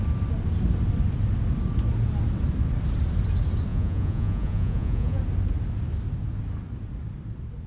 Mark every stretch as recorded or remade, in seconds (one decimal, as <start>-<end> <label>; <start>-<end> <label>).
0.0-3.7 recorded; 3.7-5.2 remade; 5.2-7.7 recorded

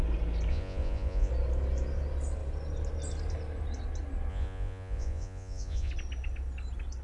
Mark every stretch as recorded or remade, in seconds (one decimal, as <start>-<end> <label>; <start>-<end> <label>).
0.0-0.5 recorded; 0.5-1.3 remade; 1.3-4.3 recorded; 4.3-5.9 remade; 5.9-7.0 recorded

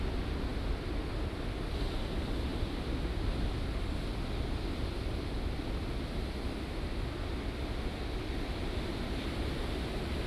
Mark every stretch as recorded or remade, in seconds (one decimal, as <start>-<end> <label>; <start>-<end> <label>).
0.0-10.3 recorded

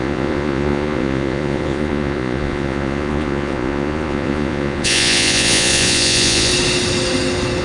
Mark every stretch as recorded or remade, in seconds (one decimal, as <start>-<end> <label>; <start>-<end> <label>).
0.0-6.5 remade; 6.5-7.6 recorded